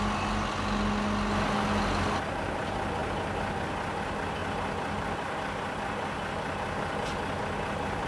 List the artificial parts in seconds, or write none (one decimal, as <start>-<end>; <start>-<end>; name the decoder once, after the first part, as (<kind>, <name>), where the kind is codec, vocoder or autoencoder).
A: none